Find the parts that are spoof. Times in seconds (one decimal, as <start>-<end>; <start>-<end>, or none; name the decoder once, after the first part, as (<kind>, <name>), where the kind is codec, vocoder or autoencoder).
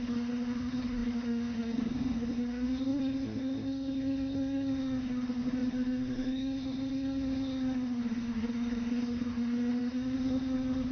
0.0-10.9 (codec, SNAC)